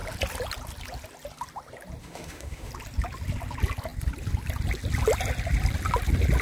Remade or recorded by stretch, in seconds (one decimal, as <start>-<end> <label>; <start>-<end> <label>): 0.0-2.0 recorded; 2.0-2.7 remade; 2.7-6.4 recorded